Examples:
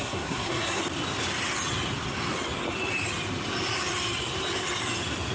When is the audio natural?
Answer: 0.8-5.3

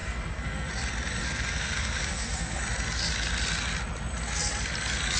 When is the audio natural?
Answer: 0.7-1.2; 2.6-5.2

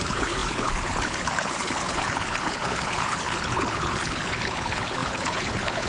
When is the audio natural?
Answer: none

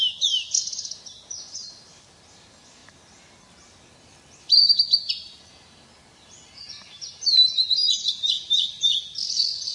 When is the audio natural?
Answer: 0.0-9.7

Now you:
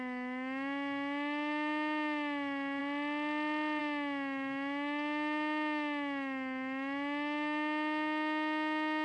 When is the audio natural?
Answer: 2.8-3.8

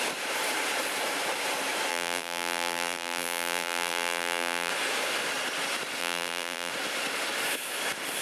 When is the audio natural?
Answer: 0.0-1.9; 4.7-6.0; 6.7-8.2

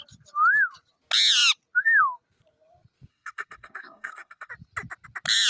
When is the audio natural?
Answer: 0.0-3.1; 4.5-5.5